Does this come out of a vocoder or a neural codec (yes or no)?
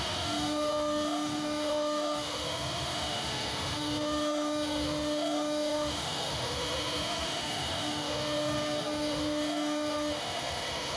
yes